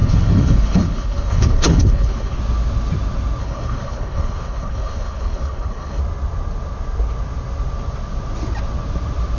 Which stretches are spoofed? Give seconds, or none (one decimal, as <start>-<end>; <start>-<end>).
0.0-2.4; 3.4-6.0